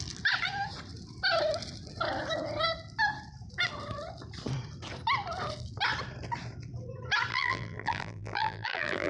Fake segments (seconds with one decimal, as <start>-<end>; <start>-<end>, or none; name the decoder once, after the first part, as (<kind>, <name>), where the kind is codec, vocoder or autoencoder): 7.3-9.1 (vocoder, BigVGAN v2)